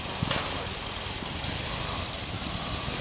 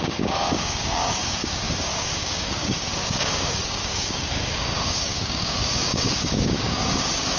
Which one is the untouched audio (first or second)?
first